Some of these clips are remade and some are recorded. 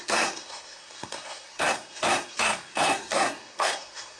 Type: remade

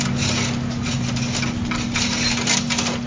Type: recorded